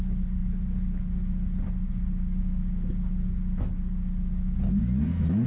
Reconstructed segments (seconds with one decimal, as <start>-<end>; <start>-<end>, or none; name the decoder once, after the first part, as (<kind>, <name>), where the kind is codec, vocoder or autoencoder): none